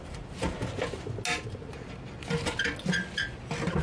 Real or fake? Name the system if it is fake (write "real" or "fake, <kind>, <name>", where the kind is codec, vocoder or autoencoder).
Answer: real